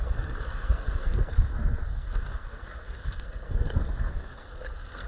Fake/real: fake